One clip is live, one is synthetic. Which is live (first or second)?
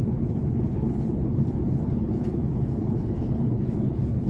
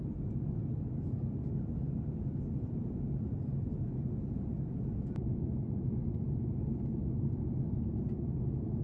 second